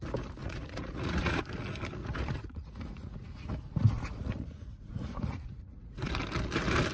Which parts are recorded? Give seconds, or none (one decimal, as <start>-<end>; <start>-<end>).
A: 0.0-0.4; 1.4-2.0; 6.1-6.9